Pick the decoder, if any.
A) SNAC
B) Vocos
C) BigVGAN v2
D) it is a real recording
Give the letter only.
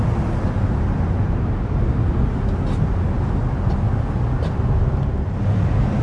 D